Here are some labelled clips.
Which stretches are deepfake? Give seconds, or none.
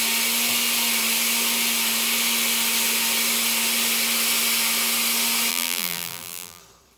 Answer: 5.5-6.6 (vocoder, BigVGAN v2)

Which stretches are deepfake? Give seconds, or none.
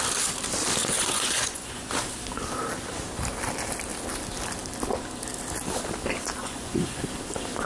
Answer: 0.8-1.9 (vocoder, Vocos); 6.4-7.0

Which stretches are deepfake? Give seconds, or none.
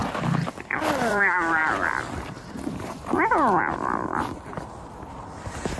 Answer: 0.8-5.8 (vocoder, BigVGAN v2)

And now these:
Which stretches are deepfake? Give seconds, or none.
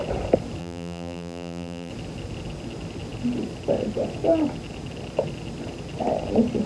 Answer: 0.6-1.9 (vocoder, BigVGAN v2)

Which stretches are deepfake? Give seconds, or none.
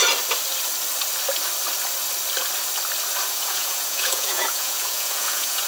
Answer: 3.4-5.7 (vocoder, Vocos)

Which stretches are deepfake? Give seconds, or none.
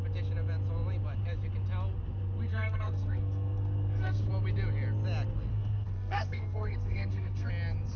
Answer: 2.5-4.3 (codec, SNAC); 5.5-7.5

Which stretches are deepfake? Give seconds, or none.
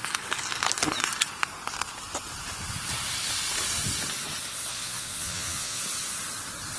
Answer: 4.7-5.8 (vocoder, Vocos)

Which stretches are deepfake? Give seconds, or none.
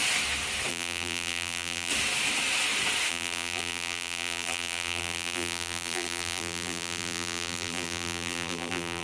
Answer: 0.7-1.9 (vocoder, BigVGAN v2); 3.1-9.0